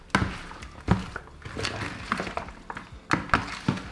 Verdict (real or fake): real